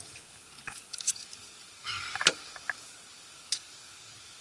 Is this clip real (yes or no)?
no